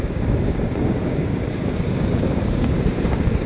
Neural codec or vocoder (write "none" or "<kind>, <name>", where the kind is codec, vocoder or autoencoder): codec, DAC